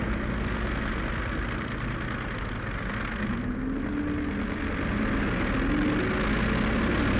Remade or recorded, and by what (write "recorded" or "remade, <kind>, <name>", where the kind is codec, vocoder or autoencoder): recorded